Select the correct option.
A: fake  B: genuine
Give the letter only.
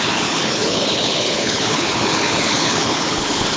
A